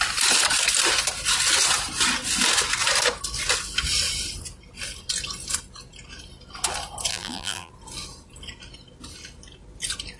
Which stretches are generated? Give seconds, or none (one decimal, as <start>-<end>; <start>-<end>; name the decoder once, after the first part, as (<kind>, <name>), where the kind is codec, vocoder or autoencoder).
7.1-7.7 (vocoder, BigVGAN v2)